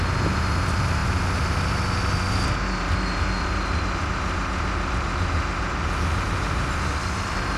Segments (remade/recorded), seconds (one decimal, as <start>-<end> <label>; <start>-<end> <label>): 0.0-7.6 recorded